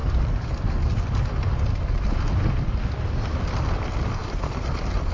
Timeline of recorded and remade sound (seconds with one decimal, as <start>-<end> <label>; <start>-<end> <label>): 0.0-5.1 recorded